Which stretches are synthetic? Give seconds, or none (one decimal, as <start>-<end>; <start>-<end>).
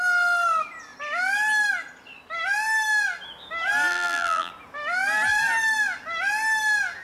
3.9-4.5